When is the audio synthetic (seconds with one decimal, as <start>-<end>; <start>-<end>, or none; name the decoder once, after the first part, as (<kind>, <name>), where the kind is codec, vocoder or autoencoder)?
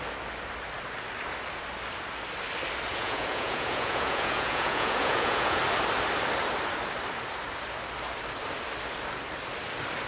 2.9-5.6 (vocoder, Vocos)